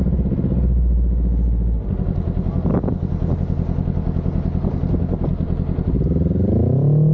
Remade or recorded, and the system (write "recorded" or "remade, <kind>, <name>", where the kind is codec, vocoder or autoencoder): recorded